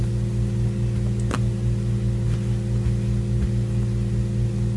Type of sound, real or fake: real